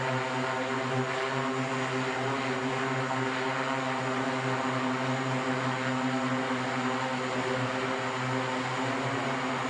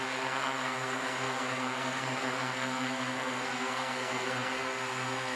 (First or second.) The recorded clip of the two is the first